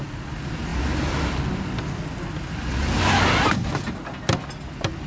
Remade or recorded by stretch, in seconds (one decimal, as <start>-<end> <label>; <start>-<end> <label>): 0.0-5.1 recorded